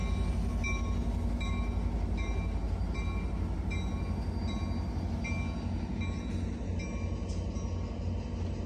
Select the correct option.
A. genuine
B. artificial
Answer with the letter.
A